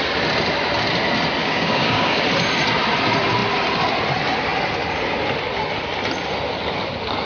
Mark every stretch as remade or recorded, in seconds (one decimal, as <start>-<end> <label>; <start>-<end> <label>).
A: 0.0-1.4 recorded; 1.4-2.2 remade; 2.2-7.3 recorded